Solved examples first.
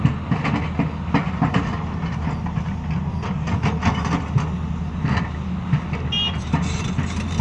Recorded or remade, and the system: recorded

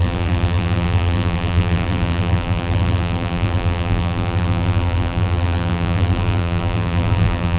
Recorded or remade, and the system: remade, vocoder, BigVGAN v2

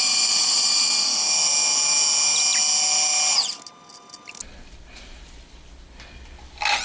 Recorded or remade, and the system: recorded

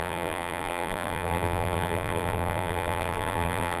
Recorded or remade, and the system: remade, vocoder, BigVGAN v2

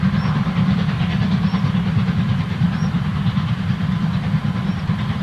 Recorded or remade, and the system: remade, vocoder, BigVGAN v2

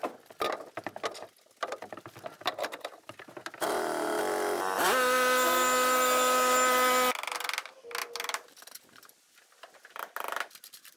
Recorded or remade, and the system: recorded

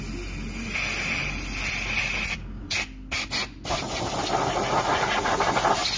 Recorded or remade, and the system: recorded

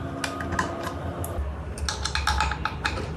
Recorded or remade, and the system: recorded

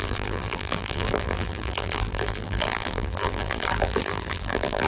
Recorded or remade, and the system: remade, vocoder, BigVGAN v2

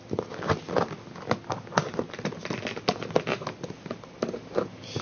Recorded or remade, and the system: recorded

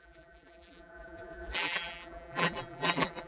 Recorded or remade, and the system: remade, vocoder, BigVGAN v2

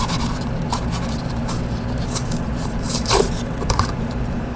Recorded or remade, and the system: remade, vocoder, BigVGAN v2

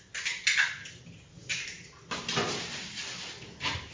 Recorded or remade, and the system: recorded